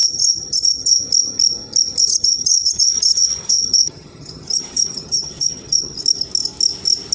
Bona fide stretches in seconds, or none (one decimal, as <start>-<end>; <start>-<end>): 1.0-2.0; 6.0-7.1